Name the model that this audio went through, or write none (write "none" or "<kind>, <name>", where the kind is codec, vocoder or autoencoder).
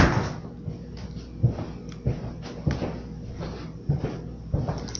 none